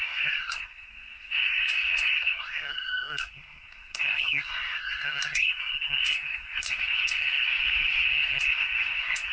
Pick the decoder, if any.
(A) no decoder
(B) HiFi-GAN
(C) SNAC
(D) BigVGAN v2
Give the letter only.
C